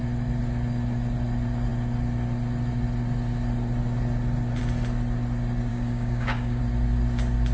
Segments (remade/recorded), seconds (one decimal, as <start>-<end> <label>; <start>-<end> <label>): 0.0-5.7 recorded; 5.7-6.6 remade; 6.6-7.5 recorded